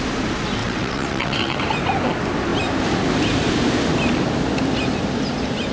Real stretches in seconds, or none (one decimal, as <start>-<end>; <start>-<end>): 0.0-0.6; 1.6-5.7